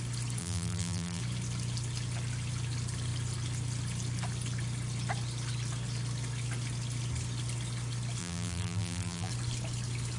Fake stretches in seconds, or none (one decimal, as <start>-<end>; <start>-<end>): 0.4-1.2; 8.2-9.3